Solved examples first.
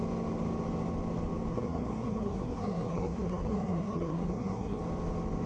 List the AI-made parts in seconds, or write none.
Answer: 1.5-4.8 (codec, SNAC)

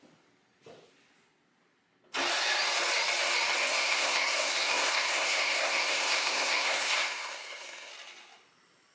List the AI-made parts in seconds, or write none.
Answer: 3.7-7.9 (codec, SNAC)